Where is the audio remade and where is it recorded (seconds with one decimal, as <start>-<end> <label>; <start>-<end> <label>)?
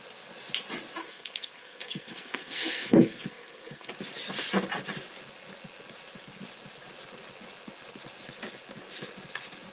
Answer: 0.0-1.0 recorded; 1.0-3.9 remade; 3.9-9.7 recorded